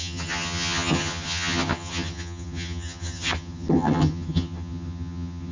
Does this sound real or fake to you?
fake